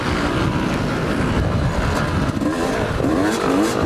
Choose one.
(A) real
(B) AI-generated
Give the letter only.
A